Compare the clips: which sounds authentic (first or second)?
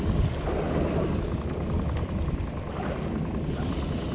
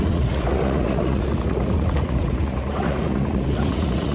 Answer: first